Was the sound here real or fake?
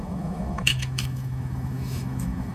fake